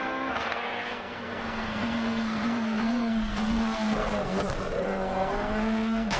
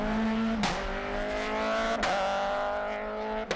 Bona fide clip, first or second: second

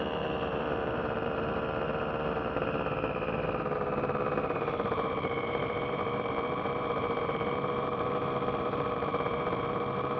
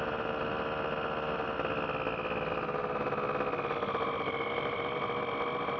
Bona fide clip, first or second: second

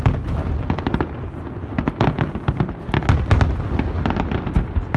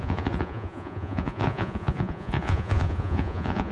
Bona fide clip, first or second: first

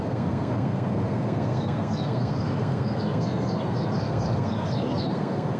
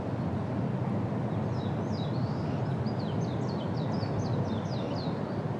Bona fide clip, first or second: second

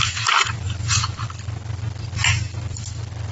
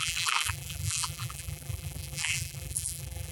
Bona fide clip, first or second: first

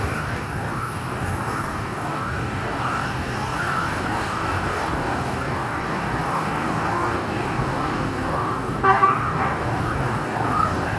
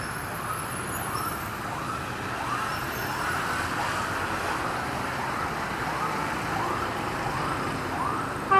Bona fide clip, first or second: second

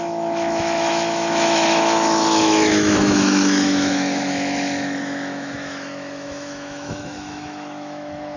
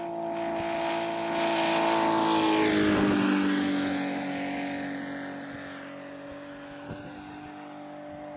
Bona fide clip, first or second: second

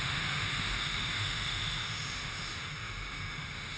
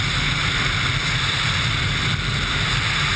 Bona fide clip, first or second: second